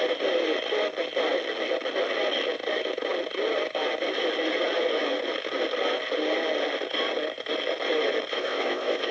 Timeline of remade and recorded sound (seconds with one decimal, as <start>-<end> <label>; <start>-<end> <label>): 0.0-8.3 recorded; 8.3-9.1 remade